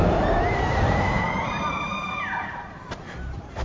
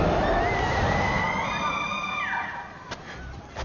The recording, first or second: second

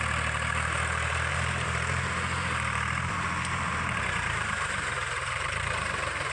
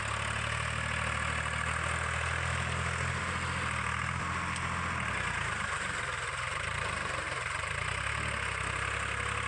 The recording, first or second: second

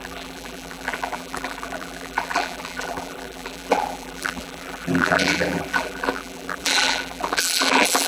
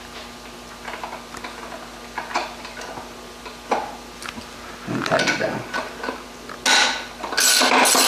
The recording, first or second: second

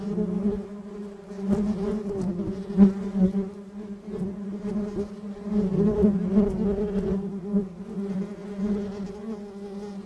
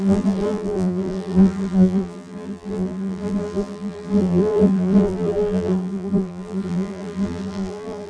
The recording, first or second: first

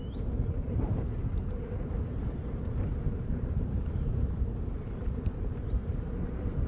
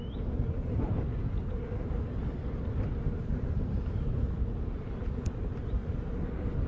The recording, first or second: second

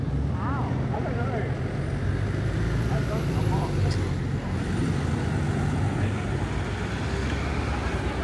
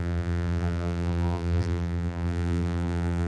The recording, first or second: first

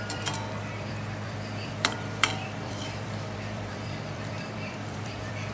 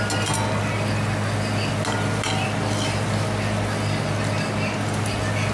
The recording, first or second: second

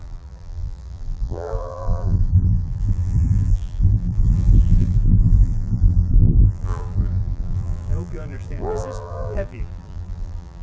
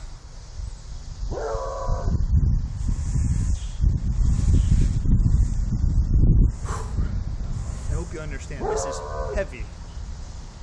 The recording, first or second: second